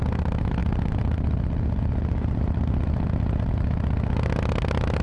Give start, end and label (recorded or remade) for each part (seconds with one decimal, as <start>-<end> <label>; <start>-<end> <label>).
0.0-5.0 recorded